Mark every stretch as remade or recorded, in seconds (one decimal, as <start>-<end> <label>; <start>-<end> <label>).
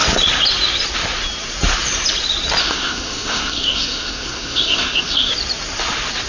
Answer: 0.0-2.6 recorded; 2.6-5.3 remade; 5.3-6.3 recorded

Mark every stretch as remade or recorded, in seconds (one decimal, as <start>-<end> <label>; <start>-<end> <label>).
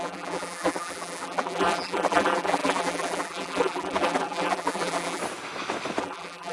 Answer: 0.0-5.2 remade; 5.2-6.0 recorded; 6.0-6.5 remade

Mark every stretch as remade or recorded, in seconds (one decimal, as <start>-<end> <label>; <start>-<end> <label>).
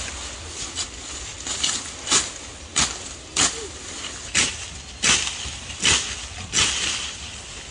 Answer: 0.0-7.7 recorded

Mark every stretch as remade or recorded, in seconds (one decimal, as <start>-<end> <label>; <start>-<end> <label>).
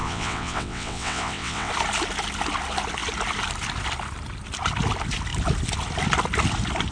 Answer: 0.0-1.7 remade; 1.7-6.9 recorded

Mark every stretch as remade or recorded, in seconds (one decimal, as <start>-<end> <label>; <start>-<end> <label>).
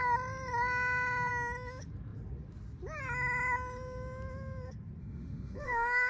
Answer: 0.0-5.0 recorded; 5.0-6.1 remade